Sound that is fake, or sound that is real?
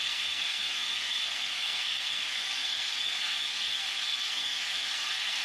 fake